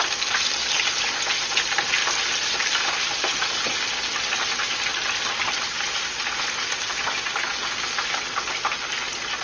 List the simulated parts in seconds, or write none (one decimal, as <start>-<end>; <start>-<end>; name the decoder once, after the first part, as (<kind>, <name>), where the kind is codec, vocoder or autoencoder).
none